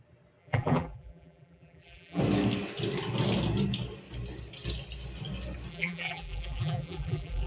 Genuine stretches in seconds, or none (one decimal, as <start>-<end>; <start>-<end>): 0.0-0.4; 2.2-5.7